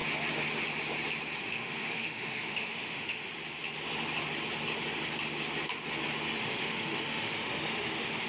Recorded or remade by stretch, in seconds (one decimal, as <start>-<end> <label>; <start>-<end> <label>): 0.0-1.4 recorded; 1.4-3.3 remade; 3.3-6.4 recorded; 6.4-8.3 remade